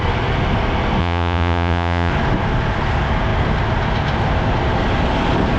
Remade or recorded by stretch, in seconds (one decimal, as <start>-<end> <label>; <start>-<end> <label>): 0.0-1.0 recorded; 1.0-2.1 remade; 2.1-5.6 recorded

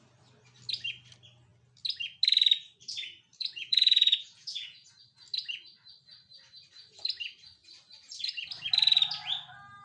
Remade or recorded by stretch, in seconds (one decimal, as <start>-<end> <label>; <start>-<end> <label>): 0.0-3.3 recorded; 3.3-4.9 remade; 4.9-9.8 recorded

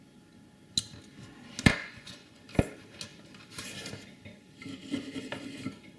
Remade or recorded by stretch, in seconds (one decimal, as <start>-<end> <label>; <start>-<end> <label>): 0.0-1.8 recorded; 1.8-2.4 remade; 2.4-6.0 recorded